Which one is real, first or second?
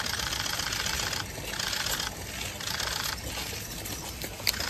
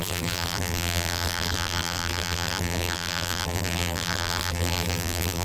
first